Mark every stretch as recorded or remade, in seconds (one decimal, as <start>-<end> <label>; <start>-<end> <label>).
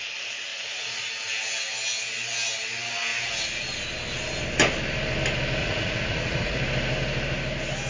0.0-0.5 recorded; 0.5-1.1 remade; 1.1-5.6 recorded; 5.6-6.6 remade; 6.6-7.9 recorded